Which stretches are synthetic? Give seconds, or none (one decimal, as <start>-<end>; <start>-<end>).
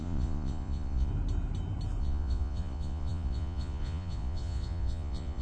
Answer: 0.0-1.1; 2.0-5.4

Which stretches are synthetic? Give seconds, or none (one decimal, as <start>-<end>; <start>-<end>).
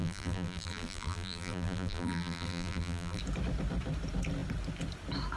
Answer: 0.0-3.2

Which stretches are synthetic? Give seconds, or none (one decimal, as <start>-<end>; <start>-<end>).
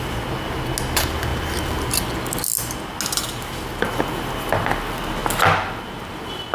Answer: none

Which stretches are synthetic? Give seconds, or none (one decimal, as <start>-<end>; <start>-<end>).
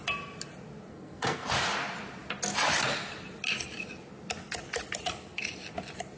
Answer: 0.9-1.5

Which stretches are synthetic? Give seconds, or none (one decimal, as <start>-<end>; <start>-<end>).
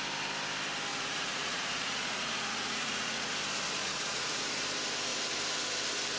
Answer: 0.9-3.3; 3.8-4.4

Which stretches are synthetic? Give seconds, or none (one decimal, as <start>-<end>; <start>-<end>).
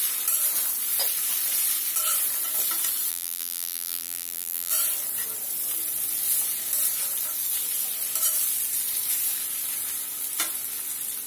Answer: 3.1-4.7